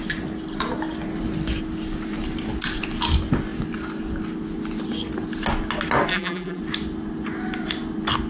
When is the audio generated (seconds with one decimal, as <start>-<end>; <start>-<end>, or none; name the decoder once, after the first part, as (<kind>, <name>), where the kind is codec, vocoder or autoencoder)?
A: 6.1-6.6 (vocoder, BigVGAN v2)